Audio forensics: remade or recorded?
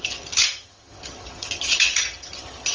remade